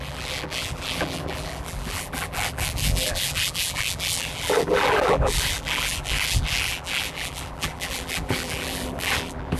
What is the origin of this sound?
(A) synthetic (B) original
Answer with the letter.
A